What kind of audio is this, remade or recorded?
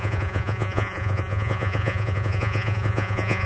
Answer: remade